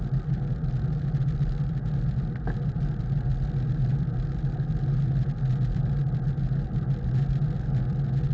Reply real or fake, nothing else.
real